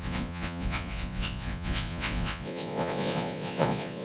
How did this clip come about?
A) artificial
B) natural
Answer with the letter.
A